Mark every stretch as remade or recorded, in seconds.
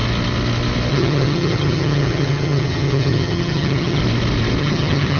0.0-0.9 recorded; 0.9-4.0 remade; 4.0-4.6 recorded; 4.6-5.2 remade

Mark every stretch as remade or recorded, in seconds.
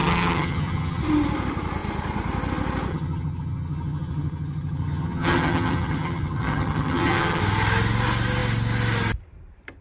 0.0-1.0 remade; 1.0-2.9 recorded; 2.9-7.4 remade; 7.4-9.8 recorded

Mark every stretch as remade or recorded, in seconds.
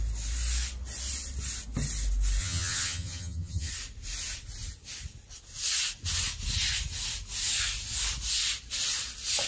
0.0-2.4 recorded; 2.4-3.7 remade; 3.7-9.5 recorded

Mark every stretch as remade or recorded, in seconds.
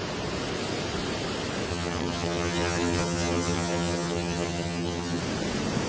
0.0-1.7 recorded; 1.7-5.2 remade; 5.2-5.9 recorded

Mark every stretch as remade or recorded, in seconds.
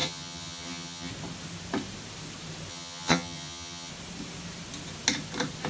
0.0-1.1 remade; 1.1-2.7 recorded; 2.7-3.9 remade; 3.9-5.7 recorded